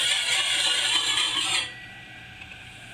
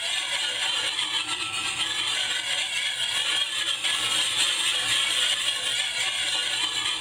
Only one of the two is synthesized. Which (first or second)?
first